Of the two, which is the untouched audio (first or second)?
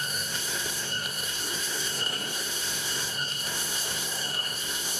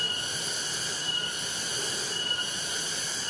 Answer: second